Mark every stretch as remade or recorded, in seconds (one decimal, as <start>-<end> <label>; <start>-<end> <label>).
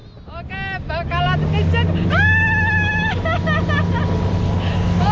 0.0-5.1 recorded